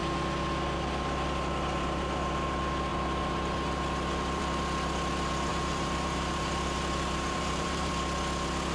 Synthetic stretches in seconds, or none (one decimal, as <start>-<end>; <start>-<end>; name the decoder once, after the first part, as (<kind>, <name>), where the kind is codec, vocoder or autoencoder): 5.5-7.9 (vocoder, BigVGAN v2)